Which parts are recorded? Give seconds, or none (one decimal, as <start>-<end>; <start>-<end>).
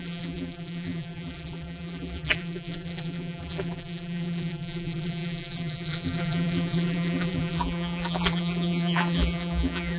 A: none